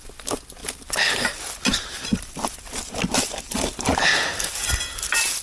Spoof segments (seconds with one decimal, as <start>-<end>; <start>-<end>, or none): none